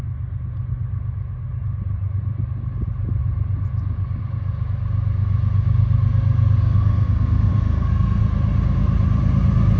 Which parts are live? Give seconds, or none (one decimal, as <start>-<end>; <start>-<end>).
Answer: 0.0-6.6; 8.2-9.8